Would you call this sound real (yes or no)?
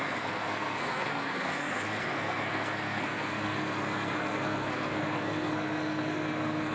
no